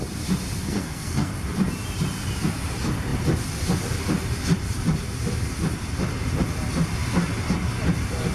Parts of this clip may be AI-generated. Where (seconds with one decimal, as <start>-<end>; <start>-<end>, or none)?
0.6-1.3